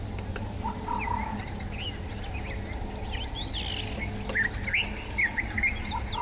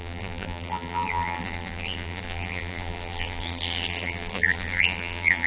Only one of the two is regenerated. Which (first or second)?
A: second